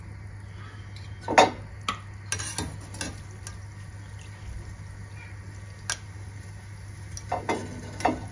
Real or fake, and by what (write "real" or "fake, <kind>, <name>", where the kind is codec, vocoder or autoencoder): real